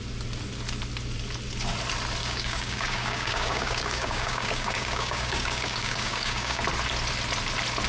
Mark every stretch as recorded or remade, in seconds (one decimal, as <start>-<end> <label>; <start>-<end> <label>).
0.0-2.2 recorded; 2.2-6.6 remade; 6.6-7.9 recorded